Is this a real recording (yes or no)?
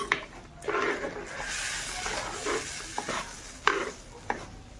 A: yes